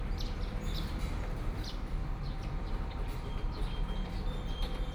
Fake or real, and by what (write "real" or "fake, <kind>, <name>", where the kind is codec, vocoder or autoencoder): fake, vocoder, BigVGAN v2